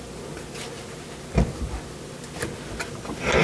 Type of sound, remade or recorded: recorded